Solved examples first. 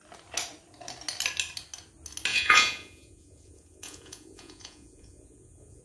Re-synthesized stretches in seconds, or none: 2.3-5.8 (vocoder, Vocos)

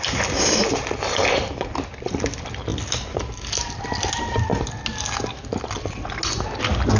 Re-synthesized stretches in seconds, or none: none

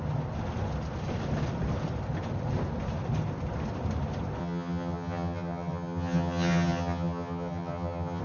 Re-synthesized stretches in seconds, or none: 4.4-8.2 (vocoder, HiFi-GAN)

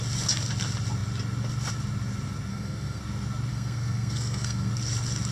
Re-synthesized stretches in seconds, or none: 2.5-3.0 (codec, SNAC); 3.5-4.7

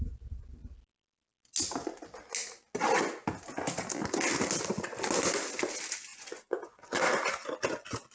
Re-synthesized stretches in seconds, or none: 6.1-7.0 (vocoder, Vocos)